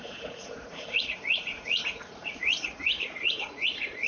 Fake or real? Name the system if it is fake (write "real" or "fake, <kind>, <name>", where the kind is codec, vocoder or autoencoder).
fake, vocoder, Vocos